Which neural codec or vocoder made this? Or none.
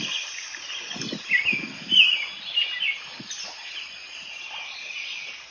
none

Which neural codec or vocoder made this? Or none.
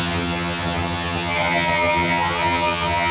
vocoder, HiFi-GAN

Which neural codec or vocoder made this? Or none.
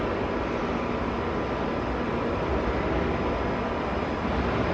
none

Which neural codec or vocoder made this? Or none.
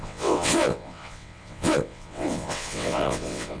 vocoder, WaveNeXt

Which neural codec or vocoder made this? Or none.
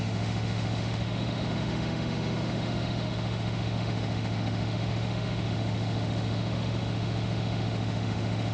autoencoder, DAC-VAE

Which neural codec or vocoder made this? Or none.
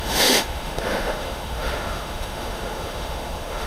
autoencoder, DAC-VAE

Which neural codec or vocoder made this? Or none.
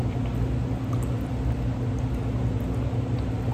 none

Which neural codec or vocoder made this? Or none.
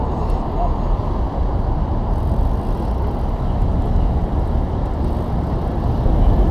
none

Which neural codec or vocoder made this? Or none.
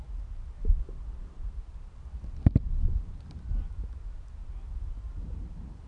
none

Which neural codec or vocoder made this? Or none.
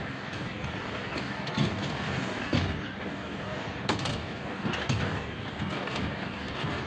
codec, DAC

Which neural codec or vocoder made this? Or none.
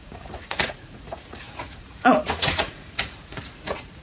vocoder, Vocos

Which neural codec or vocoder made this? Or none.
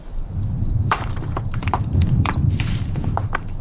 vocoder, BigVGAN v2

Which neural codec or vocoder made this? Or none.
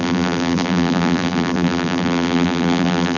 vocoder, BigVGAN v2